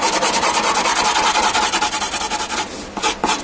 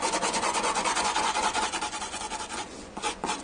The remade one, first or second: second